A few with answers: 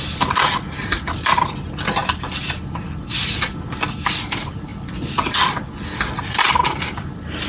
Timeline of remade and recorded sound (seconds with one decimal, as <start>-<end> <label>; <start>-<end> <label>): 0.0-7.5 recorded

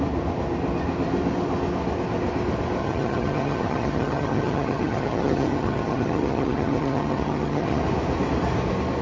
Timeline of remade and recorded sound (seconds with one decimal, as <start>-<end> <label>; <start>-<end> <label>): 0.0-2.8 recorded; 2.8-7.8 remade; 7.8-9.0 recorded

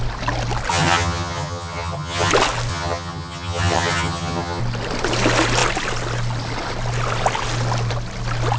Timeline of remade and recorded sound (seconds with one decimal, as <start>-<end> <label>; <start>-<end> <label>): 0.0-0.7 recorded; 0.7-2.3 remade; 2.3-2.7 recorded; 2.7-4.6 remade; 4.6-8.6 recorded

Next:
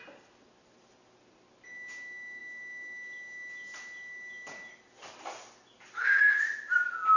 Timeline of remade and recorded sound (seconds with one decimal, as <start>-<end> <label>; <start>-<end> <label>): 0.0-7.2 recorded

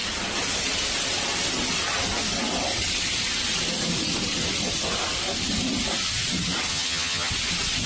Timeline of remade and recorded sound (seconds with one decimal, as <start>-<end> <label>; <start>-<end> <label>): 0.0-6.7 recorded; 6.7-7.3 remade; 7.3-7.9 recorded

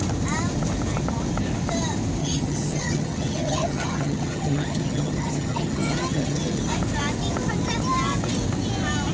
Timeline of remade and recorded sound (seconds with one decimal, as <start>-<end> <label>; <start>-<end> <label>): 0.0-2.2 recorded; 2.2-6.6 remade; 6.6-9.1 recorded